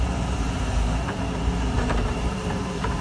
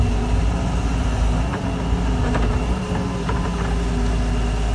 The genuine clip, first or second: second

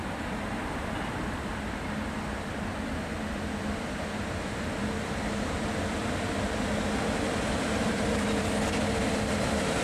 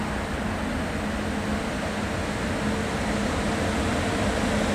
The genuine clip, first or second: second